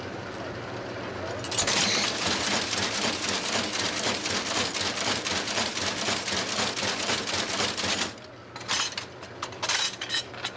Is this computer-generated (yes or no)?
no